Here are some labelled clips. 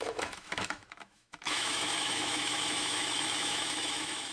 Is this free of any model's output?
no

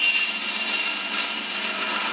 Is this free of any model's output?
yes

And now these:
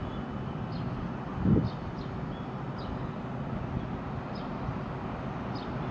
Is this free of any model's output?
yes